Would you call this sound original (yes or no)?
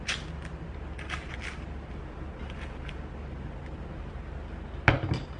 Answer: yes